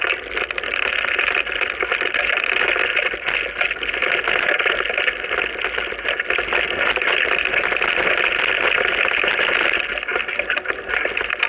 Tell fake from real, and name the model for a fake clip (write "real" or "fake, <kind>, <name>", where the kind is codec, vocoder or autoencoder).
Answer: real